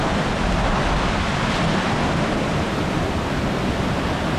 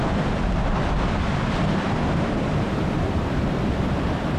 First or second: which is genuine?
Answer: first